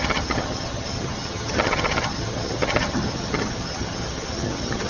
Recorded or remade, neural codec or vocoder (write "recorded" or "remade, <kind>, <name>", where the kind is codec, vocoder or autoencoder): remade, vocoder, HiFi-GAN